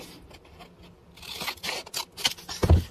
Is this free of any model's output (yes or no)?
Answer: yes